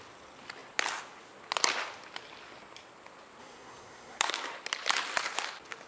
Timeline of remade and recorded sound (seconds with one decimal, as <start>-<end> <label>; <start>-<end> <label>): 0.0-3.4 recorded; 3.4-4.3 remade; 4.3-5.9 recorded